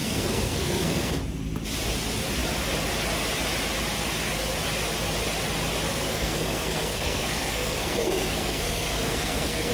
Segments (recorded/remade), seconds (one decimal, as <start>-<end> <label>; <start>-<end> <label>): 0.0-1.2 remade; 1.2-5.9 recorded; 5.9-9.7 remade